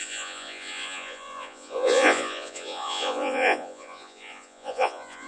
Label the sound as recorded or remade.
remade